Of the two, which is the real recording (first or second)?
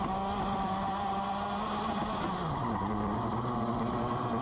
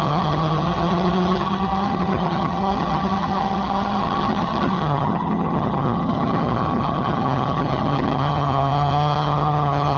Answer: first